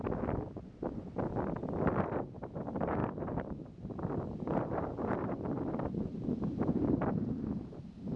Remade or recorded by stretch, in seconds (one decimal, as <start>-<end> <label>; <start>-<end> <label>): 0.0-8.2 recorded